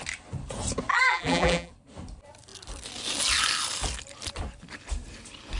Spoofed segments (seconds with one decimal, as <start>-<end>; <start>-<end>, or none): 0.9-1.7